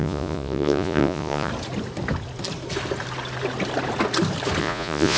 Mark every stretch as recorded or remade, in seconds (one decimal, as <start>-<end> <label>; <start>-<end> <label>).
0.0-1.5 remade; 1.5-4.6 recorded; 4.6-5.2 remade